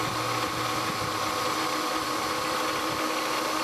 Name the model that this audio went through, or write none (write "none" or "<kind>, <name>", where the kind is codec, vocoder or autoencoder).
none